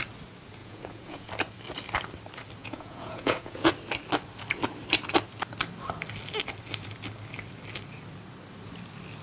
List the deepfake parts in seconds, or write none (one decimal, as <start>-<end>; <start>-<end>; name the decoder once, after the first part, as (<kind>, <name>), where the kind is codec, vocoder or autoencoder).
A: 0.6-1.3 (vocoder, Vocos); 2.6-3.7